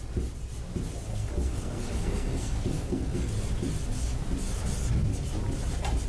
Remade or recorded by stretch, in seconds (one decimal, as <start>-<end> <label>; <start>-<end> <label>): 0.0-1.1 recorded; 1.1-3.3 remade; 3.3-6.1 recorded